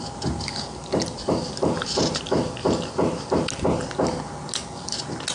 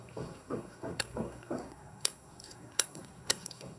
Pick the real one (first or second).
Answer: first